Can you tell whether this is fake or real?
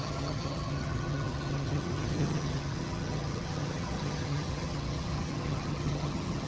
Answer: fake